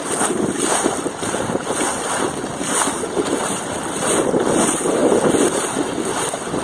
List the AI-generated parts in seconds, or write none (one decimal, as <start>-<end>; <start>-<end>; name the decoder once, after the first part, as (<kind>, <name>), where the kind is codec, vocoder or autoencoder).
none